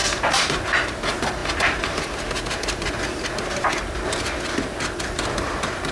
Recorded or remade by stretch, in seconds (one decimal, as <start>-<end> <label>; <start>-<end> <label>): 0.0-0.6 remade; 0.6-1.4 recorded; 1.4-3.7 remade; 3.7-5.9 recorded